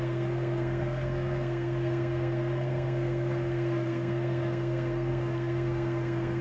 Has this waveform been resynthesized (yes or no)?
yes